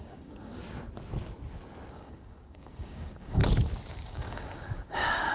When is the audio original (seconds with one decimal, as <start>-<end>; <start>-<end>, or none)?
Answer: 0.6-1.9; 3.4-3.9

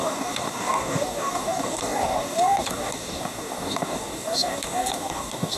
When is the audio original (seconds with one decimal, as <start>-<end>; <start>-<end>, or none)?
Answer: none

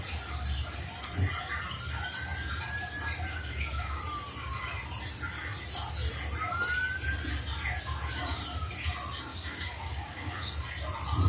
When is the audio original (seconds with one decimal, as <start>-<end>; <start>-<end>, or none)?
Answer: 0.0-3.3; 4.0-9.3; 10.5-11.3

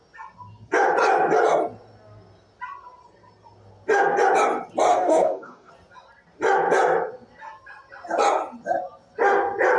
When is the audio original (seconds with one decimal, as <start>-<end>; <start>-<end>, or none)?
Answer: 0.0-4.9; 5.7-9.8

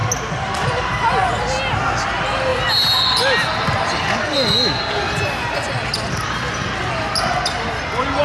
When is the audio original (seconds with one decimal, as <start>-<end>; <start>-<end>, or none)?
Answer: 0.0-8.2

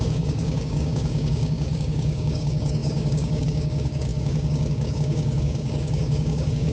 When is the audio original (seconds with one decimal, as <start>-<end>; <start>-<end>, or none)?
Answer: none